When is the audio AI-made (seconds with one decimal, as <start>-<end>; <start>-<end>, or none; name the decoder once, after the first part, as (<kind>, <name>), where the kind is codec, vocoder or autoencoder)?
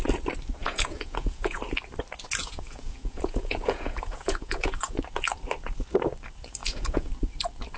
0.6-1.6 (vocoder, Vocos); 2.4-5.0; 6.6-7.1